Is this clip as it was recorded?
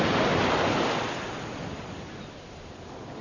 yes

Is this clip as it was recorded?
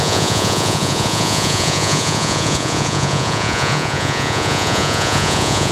no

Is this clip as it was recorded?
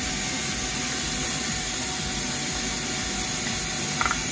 yes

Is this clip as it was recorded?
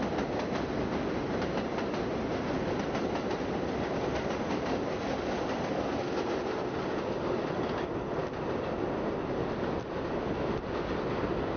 yes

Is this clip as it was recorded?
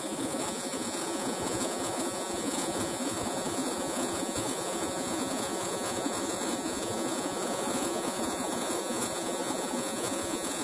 no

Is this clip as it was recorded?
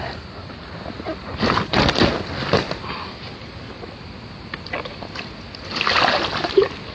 yes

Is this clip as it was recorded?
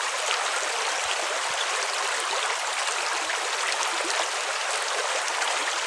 yes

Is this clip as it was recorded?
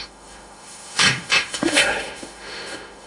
no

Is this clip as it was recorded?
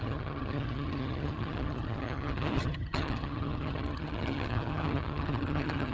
no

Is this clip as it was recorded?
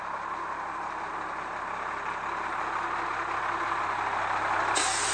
yes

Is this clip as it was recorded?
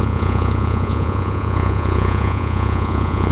no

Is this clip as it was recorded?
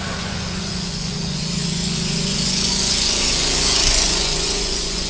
no